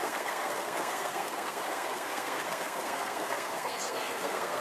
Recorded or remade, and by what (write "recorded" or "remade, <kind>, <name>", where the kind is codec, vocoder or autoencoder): remade, codec, SNAC